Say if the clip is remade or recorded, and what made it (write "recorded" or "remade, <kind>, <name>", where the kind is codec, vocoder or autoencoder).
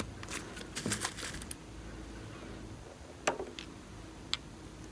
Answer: recorded